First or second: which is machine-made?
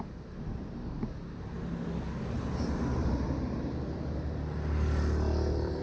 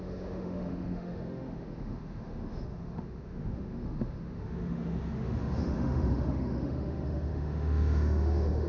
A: second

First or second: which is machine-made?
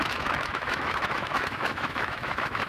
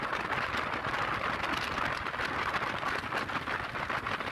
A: first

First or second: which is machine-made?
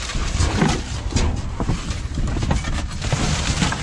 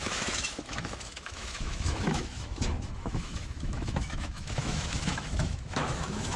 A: second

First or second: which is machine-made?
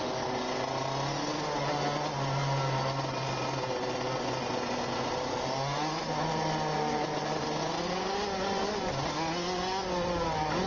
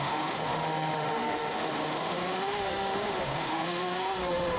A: second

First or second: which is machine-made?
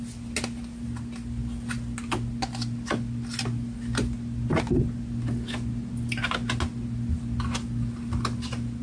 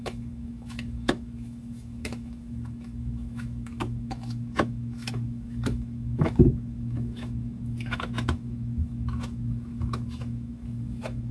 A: second